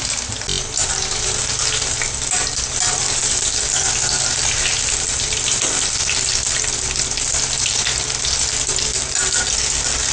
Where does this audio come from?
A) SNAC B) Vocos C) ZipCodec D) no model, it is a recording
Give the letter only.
D